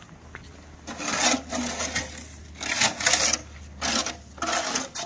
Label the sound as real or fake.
real